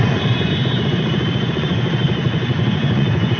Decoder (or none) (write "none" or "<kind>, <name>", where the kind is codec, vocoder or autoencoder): vocoder, Vocos